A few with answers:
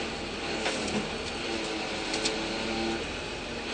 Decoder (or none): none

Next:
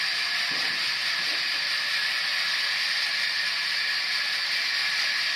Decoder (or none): none